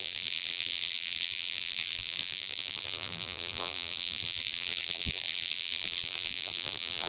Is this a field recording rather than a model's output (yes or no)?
no